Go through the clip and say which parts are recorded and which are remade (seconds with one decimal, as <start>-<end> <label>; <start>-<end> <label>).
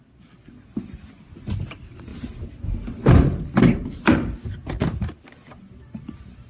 0.0-6.5 recorded